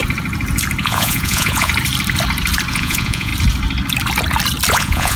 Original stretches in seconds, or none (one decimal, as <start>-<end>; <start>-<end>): 0.0-0.8; 1.7-2.7; 3.3-4.7